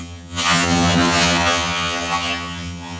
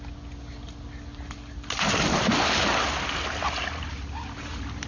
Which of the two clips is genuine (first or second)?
second